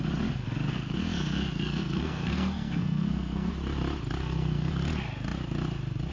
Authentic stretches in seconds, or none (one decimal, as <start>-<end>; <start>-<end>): 0.0-0.7; 3.5-4.2; 4.7-6.1